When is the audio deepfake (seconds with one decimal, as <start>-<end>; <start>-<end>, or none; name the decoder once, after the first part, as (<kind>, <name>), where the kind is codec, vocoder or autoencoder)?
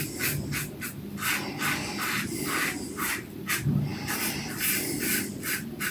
none